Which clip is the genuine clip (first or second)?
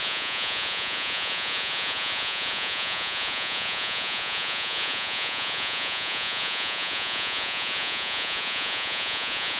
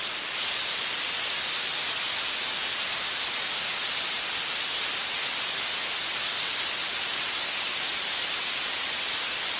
second